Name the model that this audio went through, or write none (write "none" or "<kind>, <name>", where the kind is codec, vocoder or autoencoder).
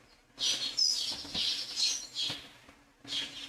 none